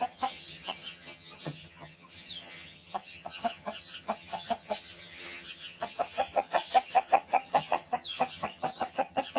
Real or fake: fake